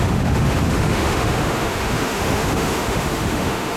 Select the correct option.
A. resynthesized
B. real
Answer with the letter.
A